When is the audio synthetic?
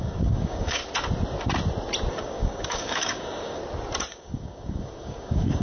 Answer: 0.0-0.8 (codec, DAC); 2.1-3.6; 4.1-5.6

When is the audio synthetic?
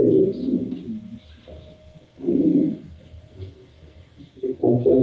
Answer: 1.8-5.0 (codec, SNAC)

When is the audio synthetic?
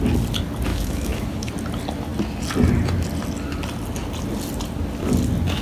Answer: 0.7-1.5 (autoencoder, DAC-VAE)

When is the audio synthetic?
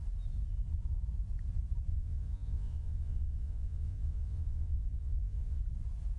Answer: 1.9-5.6 (vocoder, Vocos)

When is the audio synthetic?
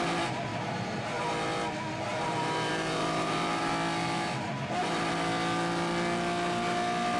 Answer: 0.5-1.2 (vocoder, BigVGAN v2); 2.1-3.7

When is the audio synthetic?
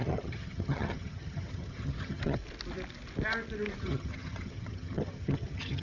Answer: 0.0-2.4 (vocoder, HiFi-GAN); 3.8-5.8